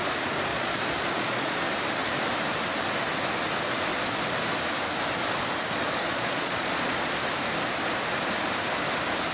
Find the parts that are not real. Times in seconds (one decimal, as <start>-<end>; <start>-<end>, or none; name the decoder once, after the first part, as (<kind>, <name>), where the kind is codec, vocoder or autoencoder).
0.5-1.6 (vocoder, Vocos); 6.0-7.2